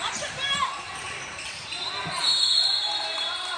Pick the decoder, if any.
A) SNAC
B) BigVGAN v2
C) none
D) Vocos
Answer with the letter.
B